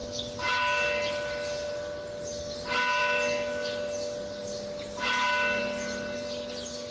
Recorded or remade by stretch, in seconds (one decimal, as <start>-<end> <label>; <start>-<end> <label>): 0.0-6.9 recorded